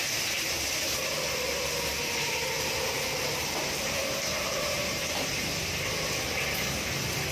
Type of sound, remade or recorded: recorded